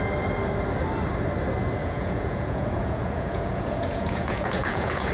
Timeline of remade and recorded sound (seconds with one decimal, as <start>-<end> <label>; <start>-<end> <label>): 0.0-1.8 recorded; 1.8-5.1 remade